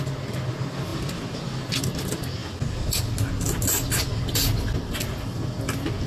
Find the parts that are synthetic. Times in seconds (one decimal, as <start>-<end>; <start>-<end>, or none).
none